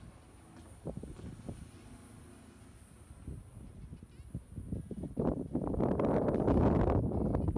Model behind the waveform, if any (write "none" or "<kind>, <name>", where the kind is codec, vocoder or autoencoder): none